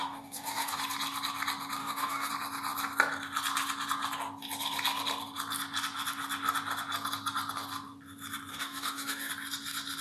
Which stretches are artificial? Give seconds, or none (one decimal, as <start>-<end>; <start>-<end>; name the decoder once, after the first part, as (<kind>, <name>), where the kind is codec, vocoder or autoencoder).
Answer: 0.0-0.8 (codec, DAC); 1.8-2.3; 8.5-9.3